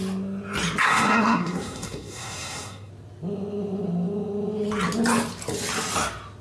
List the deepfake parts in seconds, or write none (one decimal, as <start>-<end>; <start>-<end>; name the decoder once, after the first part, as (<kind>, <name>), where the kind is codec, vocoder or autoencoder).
0.8-2.9 (codec, SNAC)